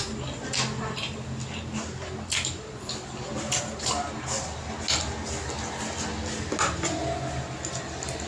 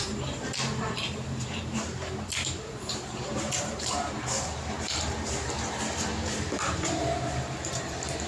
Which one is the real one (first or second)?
first